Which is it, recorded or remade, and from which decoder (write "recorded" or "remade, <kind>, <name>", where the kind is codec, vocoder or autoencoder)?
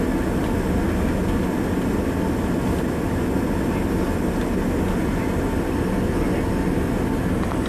recorded